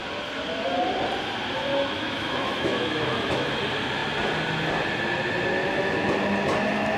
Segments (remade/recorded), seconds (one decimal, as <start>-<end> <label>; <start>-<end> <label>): 0.0-1.7 recorded; 1.7-3.6 remade; 3.6-5.6 recorded; 5.6-6.1 remade; 6.1-7.0 recorded